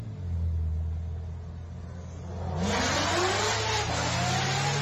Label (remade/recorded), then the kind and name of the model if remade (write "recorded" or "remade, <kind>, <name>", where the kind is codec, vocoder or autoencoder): recorded